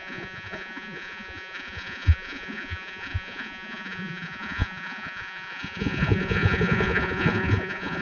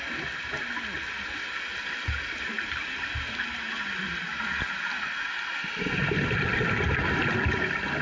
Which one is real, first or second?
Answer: second